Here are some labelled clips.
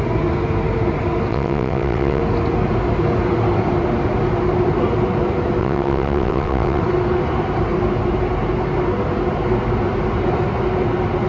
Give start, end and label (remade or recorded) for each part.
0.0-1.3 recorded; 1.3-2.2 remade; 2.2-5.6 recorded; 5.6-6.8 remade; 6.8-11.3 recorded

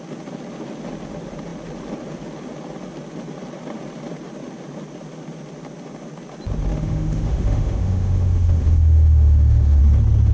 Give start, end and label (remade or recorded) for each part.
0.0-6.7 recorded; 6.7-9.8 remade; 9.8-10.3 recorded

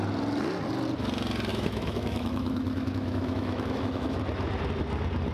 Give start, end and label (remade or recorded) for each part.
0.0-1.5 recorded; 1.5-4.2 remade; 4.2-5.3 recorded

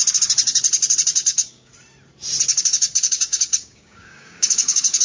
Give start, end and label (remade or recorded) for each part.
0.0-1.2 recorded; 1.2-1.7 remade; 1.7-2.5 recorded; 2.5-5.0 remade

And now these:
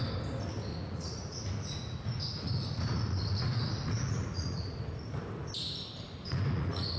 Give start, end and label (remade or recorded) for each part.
0.0-0.7 recorded; 0.7-4.8 remade; 4.8-6.2 recorded; 6.2-7.0 remade

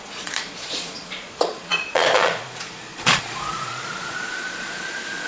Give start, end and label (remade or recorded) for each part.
0.0-5.3 remade

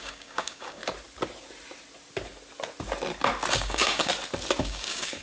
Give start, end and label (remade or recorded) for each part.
0.0-0.8 remade; 0.8-3.5 recorded; 3.5-4.1 remade; 4.1-4.6 recorded; 4.6-5.2 remade

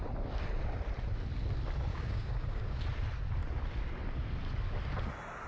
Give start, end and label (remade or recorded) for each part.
0.0-1.9 recorded; 1.9-2.8 remade; 2.8-5.5 recorded